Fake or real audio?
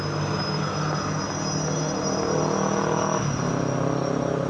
real